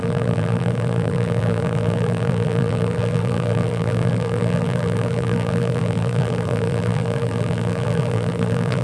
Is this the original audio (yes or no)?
no